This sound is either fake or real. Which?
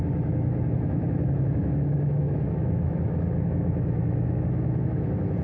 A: fake